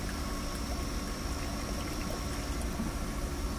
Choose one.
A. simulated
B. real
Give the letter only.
B